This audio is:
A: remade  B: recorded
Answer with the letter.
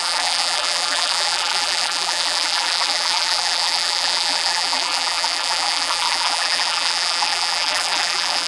A